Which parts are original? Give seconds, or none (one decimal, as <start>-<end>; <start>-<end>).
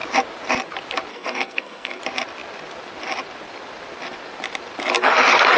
0.0-1.1; 2.0-5.6